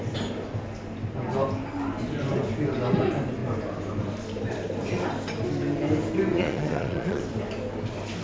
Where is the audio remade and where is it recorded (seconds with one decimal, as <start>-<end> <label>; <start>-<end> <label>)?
0.0-6.3 recorded; 6.3-7.2 remade; 7.2-8.2 recorded